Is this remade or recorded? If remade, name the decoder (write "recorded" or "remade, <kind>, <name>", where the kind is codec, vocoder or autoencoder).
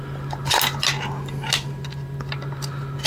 recorded